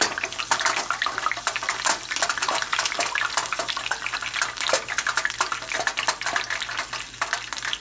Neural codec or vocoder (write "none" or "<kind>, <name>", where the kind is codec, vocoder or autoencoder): none